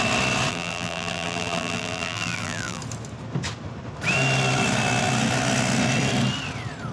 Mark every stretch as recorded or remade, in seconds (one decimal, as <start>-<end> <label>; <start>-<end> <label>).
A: 0.0-0.5 recorded; 0.5-2.8 remade; 2.8-6.9 recorded